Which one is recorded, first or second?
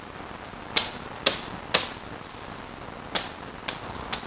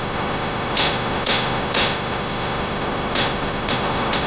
first